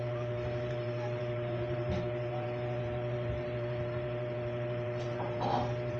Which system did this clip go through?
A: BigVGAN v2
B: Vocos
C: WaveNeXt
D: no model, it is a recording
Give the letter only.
A